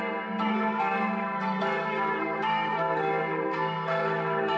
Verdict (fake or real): fake